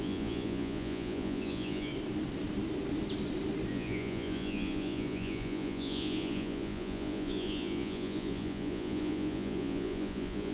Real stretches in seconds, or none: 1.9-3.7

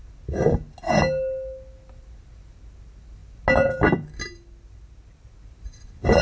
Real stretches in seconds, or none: 0.0-6.2